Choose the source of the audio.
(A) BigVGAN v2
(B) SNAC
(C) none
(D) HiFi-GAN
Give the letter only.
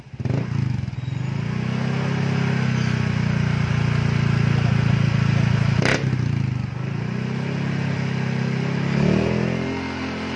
C